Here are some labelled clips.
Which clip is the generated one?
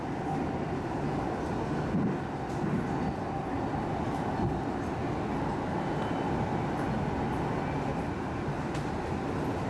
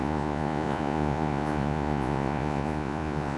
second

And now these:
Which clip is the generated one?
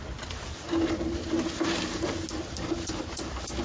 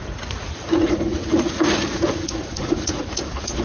second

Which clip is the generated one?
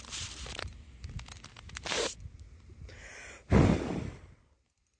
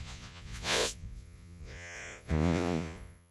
second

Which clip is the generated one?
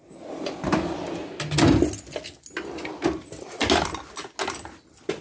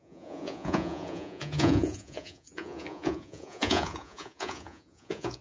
second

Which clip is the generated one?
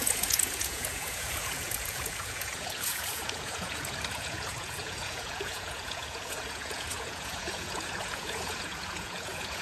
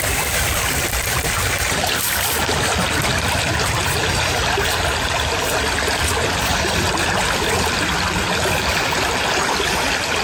first